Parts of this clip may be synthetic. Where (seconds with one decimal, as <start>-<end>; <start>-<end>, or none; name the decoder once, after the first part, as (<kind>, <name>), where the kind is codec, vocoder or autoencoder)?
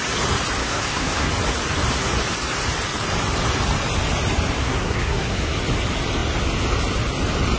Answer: 0.6-1.3 (codec, SNAC); 4.6-5.6